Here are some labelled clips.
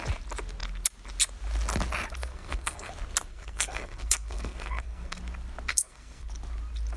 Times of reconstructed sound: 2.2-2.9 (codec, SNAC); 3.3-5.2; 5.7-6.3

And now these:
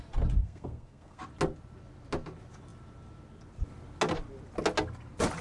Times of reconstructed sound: 0.4-1.2 (codec, SNAC)

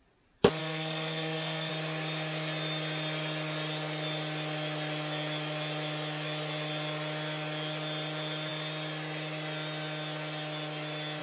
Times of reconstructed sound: 0.6-1.7 (codec, SNAC)

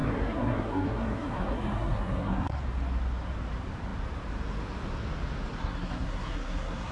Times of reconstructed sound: 0.0-2.6 (codec, SNAC); 5.6-6.9

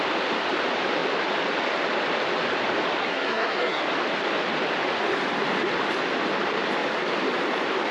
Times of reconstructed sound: 3.0-3.8 (codec, SNAC)